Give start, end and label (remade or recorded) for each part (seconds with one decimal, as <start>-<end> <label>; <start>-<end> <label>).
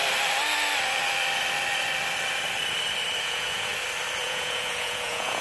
0.0-3.2 recorded; 3.2-3.7 remade; 3.7-4.2 recorded; 4.2-5.4 remade